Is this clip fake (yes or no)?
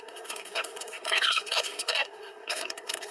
yes